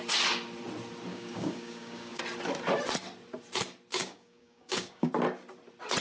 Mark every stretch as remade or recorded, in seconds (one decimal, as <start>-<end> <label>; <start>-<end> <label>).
0.0-1.1 recorded; 1.1-2.2 remade; 2.2-3.9 recorded; 3.9-5.1 remade; 5.1-6.0 recorded